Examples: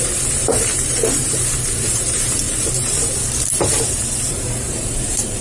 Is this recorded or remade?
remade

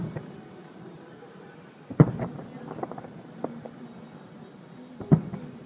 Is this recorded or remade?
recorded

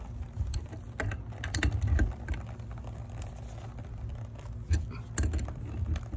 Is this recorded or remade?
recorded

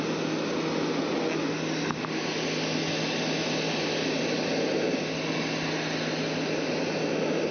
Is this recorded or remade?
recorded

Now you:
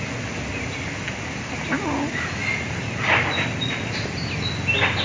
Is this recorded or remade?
recorded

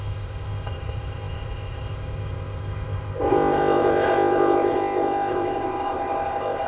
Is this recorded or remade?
remade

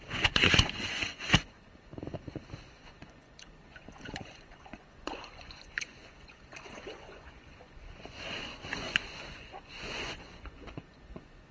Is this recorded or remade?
remade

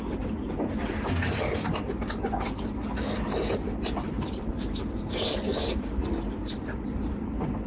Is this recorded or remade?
recorded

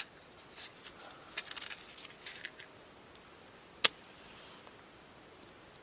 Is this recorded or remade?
recorded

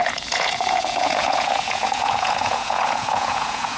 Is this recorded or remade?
remade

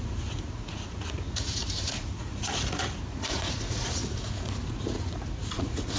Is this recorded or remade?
remade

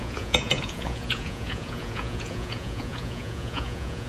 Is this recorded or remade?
remade